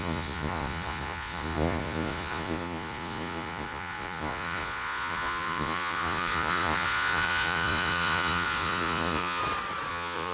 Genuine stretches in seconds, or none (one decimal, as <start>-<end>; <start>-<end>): 9.4-9.9